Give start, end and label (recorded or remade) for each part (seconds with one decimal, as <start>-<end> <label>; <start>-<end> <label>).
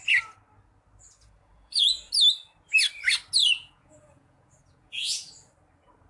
0.0-1.2 recorded; 1.2-2.1 remade; 2.1-3.4 recorded; 3.4-5.3 remade; 5.3-6.1 recorded